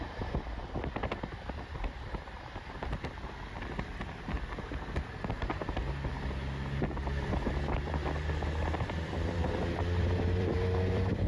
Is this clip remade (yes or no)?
yes